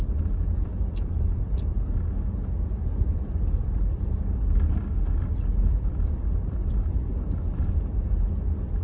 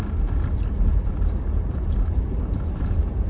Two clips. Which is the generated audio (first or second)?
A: second